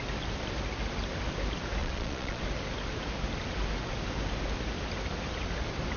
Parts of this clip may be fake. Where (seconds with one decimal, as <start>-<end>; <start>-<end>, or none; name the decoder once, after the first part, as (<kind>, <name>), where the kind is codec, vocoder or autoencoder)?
1.8-2.4 (vocoder, Vocos)